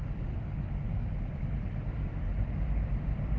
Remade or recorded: recorded